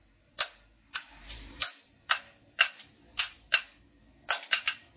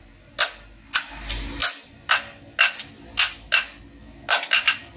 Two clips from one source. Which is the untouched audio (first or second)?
second